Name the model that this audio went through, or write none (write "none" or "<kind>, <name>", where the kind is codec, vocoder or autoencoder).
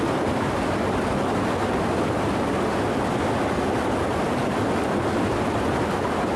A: none